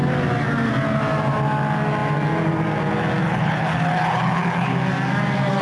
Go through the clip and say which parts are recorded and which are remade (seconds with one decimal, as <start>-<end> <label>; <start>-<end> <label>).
0.0-3.2 recorded; 3.2-4.7 remade; 4.7-5.6 recorded